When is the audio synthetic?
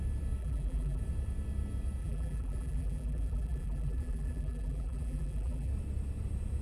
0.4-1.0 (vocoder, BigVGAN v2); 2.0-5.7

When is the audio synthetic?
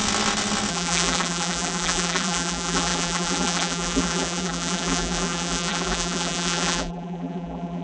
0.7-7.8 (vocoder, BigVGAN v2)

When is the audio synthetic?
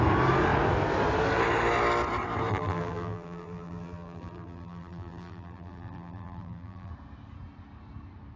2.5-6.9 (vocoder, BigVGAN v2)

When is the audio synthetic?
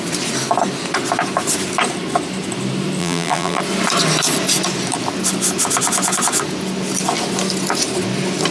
3.0-3.6 (vocoder, BigVGAN v2)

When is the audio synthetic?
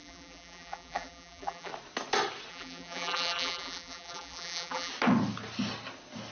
0.0-1.7 (vocoder, BigVGAN v2); 2.5-4.9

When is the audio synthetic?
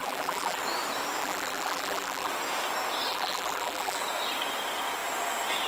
0.0-0.6 (vocoder, BigVGAN v2); 1.2-2.3; 3.1-4.0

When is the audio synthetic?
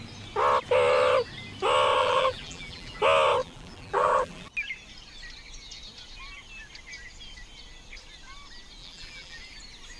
2.0-3.0 (vocoder, BigVGAN v2); 3.4-4.5; 8.8-9.4